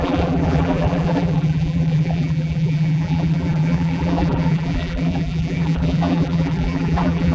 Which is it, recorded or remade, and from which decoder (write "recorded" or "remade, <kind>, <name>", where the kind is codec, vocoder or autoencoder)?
remade, vocoder, BigVGAN v2